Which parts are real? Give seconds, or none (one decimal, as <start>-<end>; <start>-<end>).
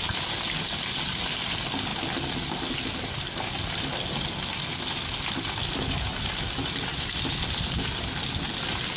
0.0-9.0